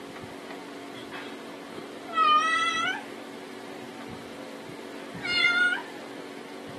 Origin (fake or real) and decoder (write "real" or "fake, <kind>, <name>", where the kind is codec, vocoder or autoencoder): real